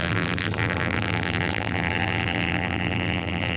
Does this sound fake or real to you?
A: fake